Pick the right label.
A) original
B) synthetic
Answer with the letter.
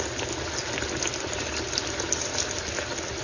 A